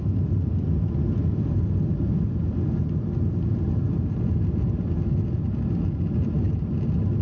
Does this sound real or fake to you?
real